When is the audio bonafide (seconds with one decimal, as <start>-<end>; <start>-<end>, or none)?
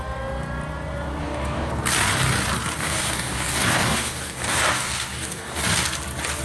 0.0-1.2; 1.7-2.8; 5.6-6.4